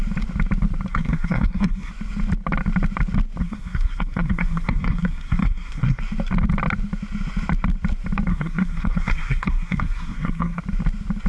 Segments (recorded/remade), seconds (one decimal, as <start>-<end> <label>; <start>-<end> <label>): 0.0-0.9 recorded; 0.9-1.9 remade; 1.9-3.4 recorded; 3.4-6.0 remade; 6.0-8.3 recorded; 8.3-10.6 remade; 10.6-11.3 recorded